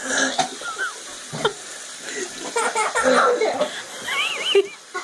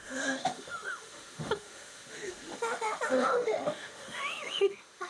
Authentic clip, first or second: first